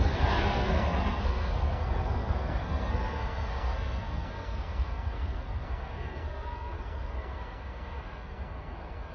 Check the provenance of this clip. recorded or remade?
remade